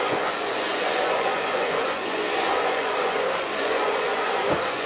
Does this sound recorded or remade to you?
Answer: remade